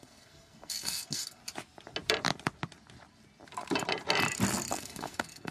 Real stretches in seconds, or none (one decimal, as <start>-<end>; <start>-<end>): 1.4-4.7